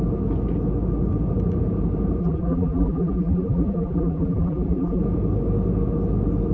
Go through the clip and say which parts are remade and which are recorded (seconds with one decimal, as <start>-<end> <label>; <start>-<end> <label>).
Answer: 0.0-2.2 recorded; 2.2-5.0 remade; 5.0-6.5 recorded